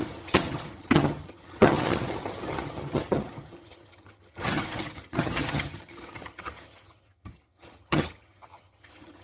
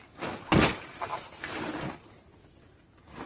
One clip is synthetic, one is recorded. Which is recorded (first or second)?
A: second